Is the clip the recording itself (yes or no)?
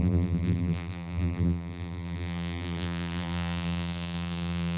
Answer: no